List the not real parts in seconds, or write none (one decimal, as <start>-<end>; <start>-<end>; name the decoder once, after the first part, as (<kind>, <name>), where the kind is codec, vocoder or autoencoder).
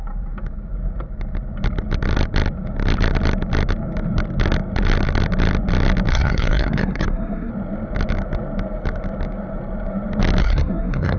6.1-7.5 (codec, SNAC); 10.4-11.2